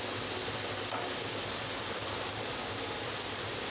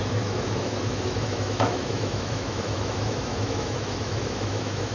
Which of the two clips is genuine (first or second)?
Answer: first